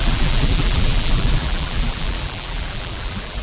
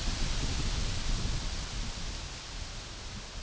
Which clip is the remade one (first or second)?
first